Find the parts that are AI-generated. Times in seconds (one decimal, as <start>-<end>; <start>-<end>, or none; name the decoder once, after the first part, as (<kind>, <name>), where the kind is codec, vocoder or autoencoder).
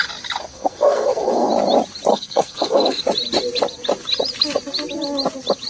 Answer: 0.5-1.5 (codec, SNAC); 2.1-3.0